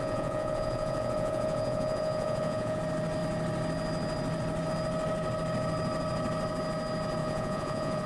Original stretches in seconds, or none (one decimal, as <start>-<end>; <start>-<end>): 2.8-7.2